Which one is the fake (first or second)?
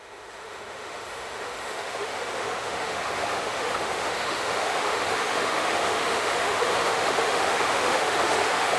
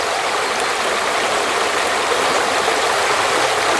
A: first